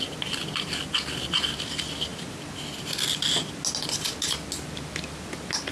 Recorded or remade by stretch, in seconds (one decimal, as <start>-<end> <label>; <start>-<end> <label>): 0.0-5.7 recorded